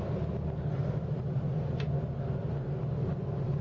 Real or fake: real